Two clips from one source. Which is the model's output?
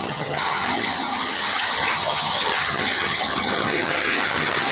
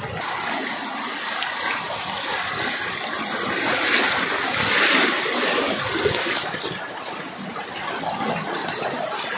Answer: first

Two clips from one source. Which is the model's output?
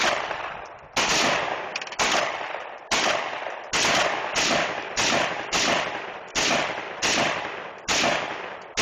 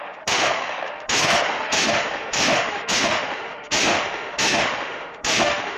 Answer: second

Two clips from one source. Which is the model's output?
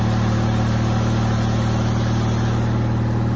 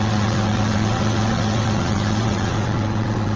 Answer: second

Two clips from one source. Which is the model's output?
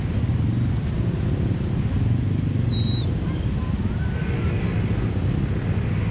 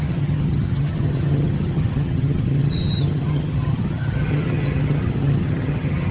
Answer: second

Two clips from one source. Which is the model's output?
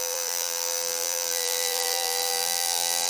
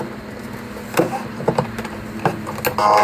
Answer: first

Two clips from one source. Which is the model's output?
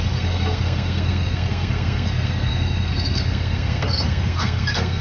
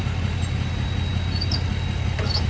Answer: first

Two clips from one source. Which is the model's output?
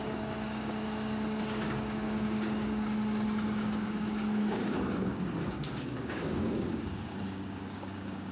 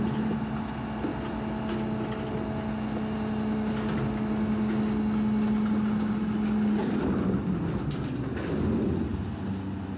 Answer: first